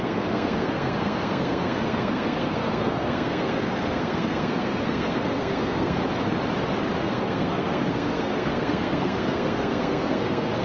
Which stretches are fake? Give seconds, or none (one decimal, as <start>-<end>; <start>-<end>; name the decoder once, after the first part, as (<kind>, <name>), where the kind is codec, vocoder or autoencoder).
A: 0.0-6.0 (codec, SNAC); 7.0-10.6